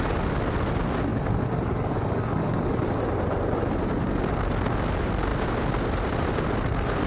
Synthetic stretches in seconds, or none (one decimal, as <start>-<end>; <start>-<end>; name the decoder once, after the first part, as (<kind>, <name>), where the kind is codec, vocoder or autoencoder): 1.1-2.7 (codec, DAC)